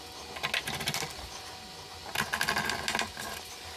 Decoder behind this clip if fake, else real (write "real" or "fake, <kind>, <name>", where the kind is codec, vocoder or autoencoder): real